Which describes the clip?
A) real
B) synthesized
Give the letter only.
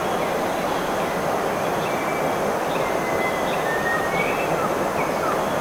A